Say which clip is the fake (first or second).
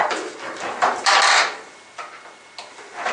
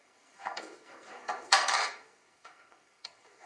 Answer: second